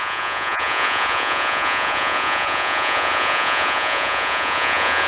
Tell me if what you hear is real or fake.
fake